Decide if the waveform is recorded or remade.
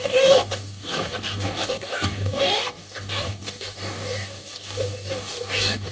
remade